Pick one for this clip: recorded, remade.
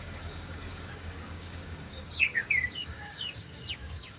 remade